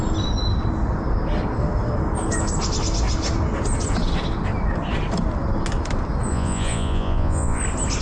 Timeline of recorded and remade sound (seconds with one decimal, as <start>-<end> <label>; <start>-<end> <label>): 0.0-6.3 recorded; 6.3-7.6 remade; 7.6-8.0 recorded